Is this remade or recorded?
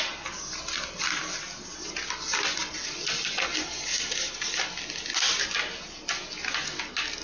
recorded